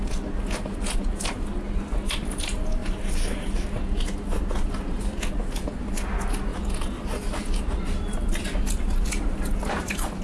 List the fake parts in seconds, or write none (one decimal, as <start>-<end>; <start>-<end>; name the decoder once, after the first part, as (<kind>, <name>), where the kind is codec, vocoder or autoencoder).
none